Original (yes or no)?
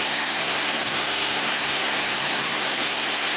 no